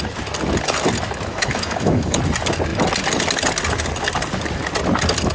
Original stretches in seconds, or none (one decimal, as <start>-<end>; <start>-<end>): 0.0-1.3; 2.2-5.3